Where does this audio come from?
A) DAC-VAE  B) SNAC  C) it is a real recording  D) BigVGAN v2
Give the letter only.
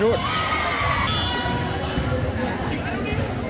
C